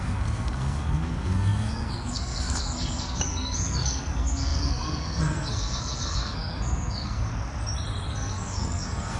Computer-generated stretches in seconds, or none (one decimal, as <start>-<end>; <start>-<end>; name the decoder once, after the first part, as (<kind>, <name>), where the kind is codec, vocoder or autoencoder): 0.0-7.3 (codec, SNAC); 8.1-9.2